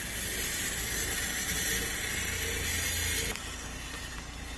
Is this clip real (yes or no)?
yes